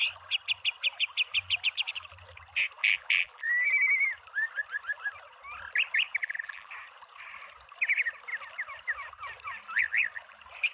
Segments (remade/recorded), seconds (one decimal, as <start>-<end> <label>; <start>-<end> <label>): 0.0-2.8 recorded; 2.8-3.5 remade; 3.5-6.2 recorded; 6.2-6.7 remade; 6.7-10.7 recorded